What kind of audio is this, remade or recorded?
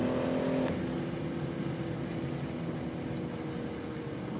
recorded